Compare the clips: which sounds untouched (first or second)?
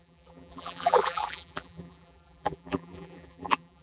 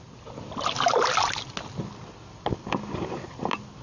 second